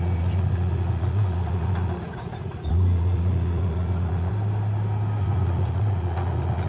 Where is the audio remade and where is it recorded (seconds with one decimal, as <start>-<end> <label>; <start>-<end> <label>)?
0.0-4.3 remade; 4.3-5.2 recorded; 5.2-6.7 remade